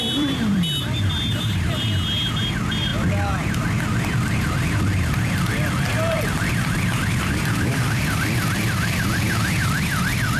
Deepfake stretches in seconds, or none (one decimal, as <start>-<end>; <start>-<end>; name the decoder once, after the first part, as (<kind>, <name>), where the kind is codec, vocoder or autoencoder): 0.0-2.9 (vocoder, BigVGAN v2); 7.2-10.4